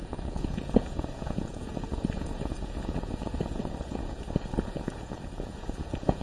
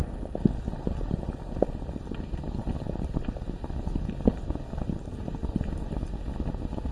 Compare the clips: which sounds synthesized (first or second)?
first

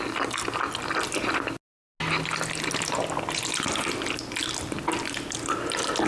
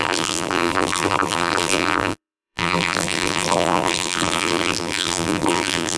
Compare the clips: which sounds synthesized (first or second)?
second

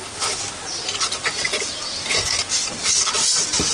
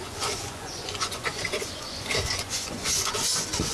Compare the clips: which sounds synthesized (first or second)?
second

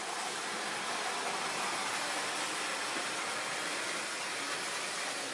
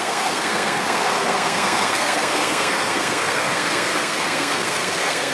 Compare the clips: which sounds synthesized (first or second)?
second